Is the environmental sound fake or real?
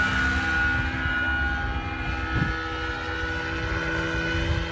real